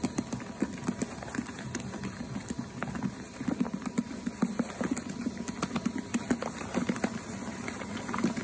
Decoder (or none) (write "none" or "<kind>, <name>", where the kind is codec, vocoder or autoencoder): none